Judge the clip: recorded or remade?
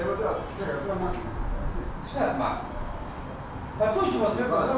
recorded